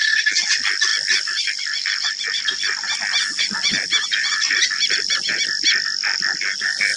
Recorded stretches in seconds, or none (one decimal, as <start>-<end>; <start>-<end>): 0.0-7.0